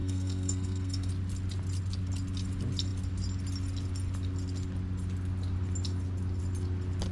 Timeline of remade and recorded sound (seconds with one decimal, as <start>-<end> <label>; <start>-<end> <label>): 0.0-1.1 remade; 1.1-7.1 recorded